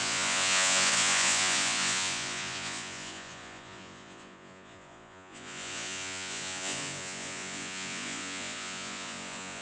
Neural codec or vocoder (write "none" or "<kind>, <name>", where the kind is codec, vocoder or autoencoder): vocoder, Vocos